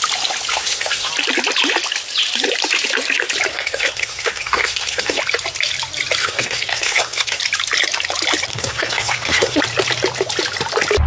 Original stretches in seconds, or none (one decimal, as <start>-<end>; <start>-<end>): 0.0-0.5; 1.1-3.5; 5.2-6.2; 7.4-8.5; 9.6-11.1